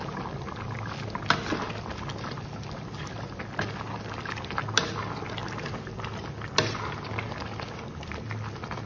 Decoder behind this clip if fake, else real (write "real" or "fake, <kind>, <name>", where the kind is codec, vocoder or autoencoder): real